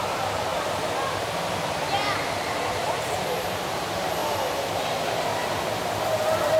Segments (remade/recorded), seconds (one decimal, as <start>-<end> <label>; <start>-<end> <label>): 0.0-0.5 remade; 0.5-2.9 recorded; 2.9-4.2 remade; 4.2-4.7 recorded; 4.7-5.3 remade; 5.3-6.6 recorded